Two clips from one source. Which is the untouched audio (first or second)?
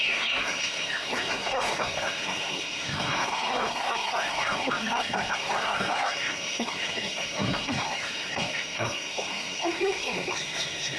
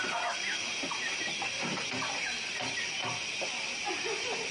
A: second